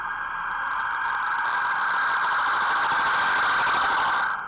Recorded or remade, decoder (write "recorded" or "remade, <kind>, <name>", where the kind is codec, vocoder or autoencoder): recorded